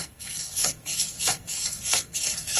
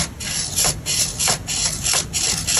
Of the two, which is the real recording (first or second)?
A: second